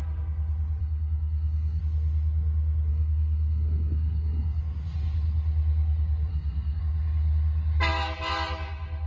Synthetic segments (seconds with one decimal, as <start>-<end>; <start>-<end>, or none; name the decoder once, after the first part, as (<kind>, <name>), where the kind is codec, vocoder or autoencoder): 0.8-1.8 (codec, SNAC); 2.9-4.6; 6.3-6.8